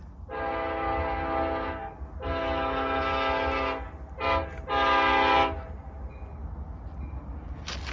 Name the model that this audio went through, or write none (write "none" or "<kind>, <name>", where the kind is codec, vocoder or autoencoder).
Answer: none